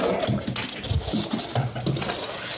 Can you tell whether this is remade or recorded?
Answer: recorded